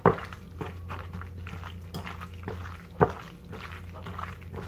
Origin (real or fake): real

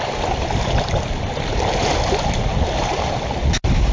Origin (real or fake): real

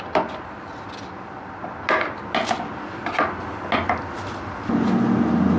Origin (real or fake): real